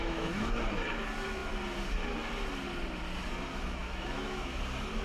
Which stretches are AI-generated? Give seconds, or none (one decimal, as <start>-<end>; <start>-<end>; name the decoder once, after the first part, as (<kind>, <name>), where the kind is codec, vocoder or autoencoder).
0.0-0.6 (autoencoder, DAC-VAE); 3.8-4.6